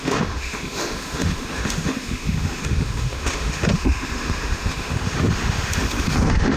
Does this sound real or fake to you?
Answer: fake